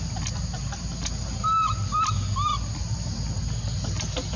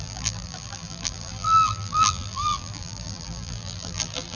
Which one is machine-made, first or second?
second